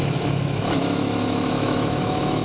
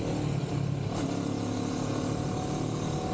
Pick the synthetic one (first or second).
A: first